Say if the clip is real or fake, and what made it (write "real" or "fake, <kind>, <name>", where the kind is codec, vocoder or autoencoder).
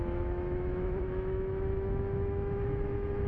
fake, autoencoder, DAC-VAE